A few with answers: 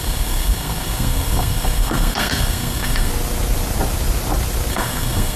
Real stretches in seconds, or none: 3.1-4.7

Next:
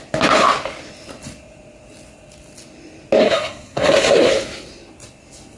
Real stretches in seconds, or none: 0.0-3.2; 4.3-5.6

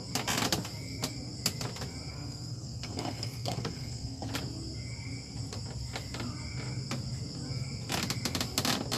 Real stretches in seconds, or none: 0.0-2.1; 4.3-9.0

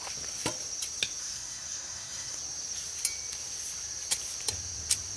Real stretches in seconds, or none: 0.0-1.2; 2.4-5.2